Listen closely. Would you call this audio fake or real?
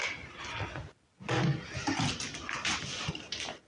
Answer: real